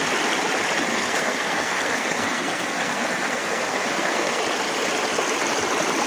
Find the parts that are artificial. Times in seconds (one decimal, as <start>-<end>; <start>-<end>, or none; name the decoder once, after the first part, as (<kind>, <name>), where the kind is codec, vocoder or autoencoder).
0.9-4.4 (codec, SNAC)